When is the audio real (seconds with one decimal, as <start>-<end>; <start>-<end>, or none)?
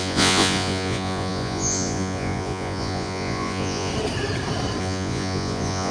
3.9-4.8